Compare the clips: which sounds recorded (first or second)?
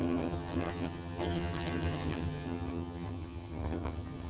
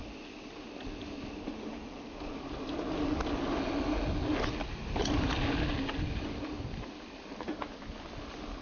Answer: second